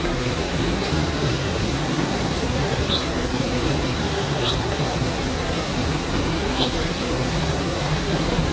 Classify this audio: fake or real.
fake